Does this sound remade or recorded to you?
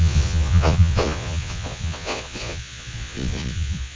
remade